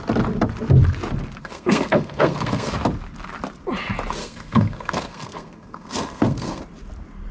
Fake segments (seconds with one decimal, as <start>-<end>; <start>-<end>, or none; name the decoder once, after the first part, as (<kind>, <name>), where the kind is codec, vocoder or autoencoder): 1.4-2.7 (codec, SNAC); 4.2-6.6